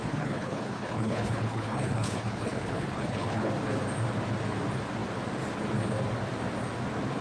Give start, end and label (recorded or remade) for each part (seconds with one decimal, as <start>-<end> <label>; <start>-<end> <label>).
0.0-3.5 remade; 3.5-7.2 recorded